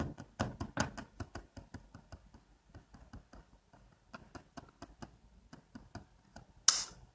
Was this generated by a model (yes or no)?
no